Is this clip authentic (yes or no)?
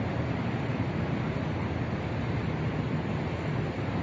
yes